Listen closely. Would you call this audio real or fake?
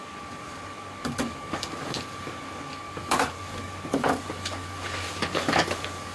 fake